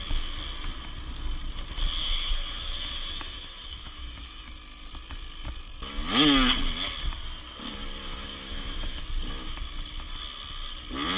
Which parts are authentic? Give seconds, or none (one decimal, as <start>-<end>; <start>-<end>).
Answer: 0.0-2.0; 4.5-8.0; 9.0-11.2